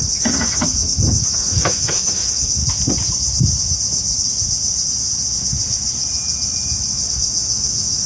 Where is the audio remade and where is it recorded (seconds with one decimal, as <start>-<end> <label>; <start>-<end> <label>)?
0.0-2.6 remade; 2.6-7.1 recorded; 7.1-8.1 remade